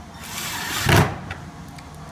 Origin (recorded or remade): recorded